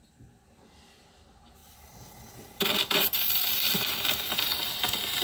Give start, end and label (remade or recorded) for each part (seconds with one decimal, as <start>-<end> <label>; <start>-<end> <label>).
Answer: 0.0-1.6 recorded; 1.6-4.7 remade; 4.7-5.2 recorded